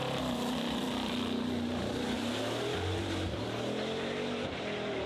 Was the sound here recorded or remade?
remade